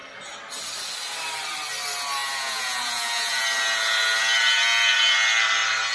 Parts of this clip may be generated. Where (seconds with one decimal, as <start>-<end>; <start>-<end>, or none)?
2.2-3.4